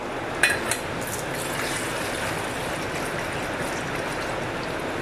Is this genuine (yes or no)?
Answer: yes